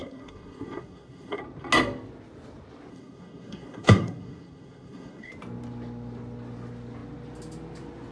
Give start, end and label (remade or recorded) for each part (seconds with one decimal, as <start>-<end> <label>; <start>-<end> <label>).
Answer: 0.0-1.4 remade; 1.4-2.9 recorded; 2.9-5.3 remade; 5.3-8.1 recorded